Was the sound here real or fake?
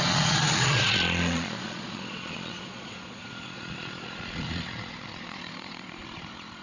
fake